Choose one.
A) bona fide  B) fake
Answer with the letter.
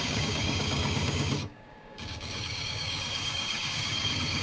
B